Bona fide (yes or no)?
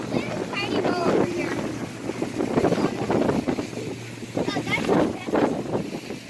yes